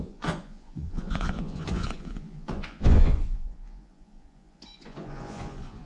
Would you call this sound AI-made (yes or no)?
yes